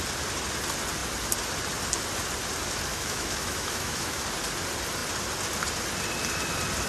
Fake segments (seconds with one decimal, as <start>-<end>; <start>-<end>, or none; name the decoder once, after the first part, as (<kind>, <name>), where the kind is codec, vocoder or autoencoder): 2.9-4.2 (autoencoder, DAC-VAE)